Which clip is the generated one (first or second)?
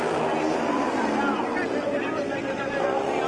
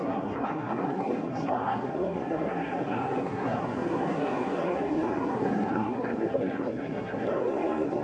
second